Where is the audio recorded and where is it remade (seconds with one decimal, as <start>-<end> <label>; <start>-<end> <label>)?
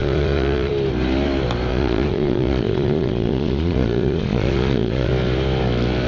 0.0-0.7 remade; 0.7-1.7 recorded; 1.7-5.1 remade; 5.1-6.1 recorded